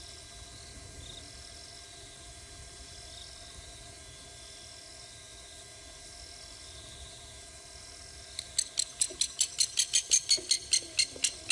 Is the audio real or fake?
real